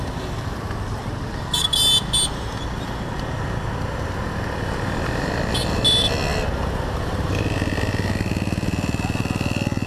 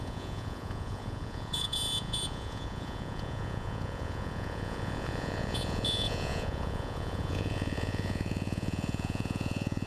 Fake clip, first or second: second